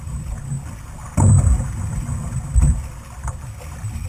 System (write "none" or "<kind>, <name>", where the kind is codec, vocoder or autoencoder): none